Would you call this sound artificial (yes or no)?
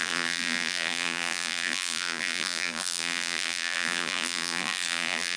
yes